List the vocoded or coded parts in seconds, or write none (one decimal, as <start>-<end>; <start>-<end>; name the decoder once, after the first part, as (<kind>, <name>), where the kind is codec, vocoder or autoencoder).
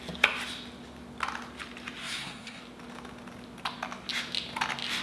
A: 2.0-2.6 (codec, SNAC)